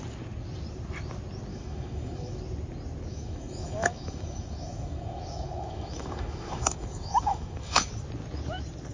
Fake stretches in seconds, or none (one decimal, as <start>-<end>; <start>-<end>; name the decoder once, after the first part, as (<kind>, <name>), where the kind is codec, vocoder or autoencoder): 1.5-2.4 (autoencoder, DAC-VAE); 3.1-7.9

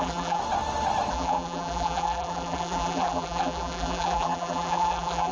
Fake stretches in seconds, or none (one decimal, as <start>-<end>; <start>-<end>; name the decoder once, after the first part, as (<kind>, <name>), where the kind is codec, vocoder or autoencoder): 0.0-0.4 (vocoder, BigVGAN v2); 1.1-5.3

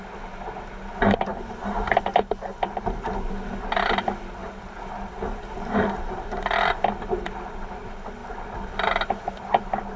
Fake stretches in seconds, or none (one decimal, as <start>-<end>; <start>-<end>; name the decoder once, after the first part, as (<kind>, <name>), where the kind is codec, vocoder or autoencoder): 1.3-2.0 (vocoder, BigVGAN v2); 4.4-6.4

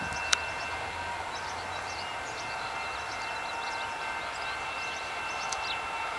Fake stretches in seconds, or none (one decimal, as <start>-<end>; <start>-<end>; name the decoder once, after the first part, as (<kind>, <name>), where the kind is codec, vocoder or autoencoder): none